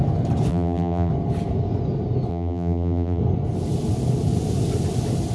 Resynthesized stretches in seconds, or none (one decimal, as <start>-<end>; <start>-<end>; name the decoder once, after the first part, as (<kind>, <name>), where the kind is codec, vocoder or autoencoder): 0.5-1.1 (vocoder, BigVGAN v2); 2.3-3.2